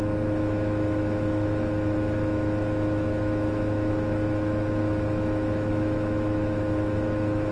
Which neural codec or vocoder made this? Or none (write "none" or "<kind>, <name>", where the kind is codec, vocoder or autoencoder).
autoencoder, DAC-VAE